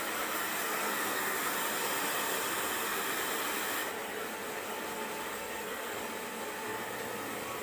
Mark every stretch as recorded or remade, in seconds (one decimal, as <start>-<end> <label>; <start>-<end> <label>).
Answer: 0.0-0.5 recorded; 0.5-1.2 remade; 1.2-5.3 recorded; 5.3-6.0 remade; 6.0-7.6 recorded